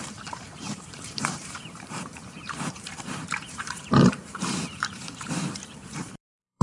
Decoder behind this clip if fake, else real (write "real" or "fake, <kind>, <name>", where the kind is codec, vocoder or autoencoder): fake, vocoder, BigVGAN v2